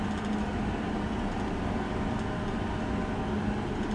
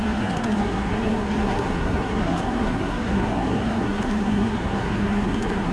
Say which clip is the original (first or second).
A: first